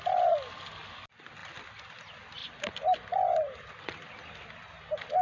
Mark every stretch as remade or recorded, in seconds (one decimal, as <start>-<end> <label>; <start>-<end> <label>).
0.0-5.2 recorded